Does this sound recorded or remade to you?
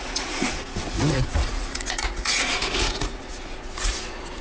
remade